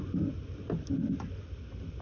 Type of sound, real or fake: real